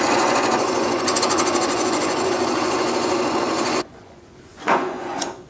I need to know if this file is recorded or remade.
remade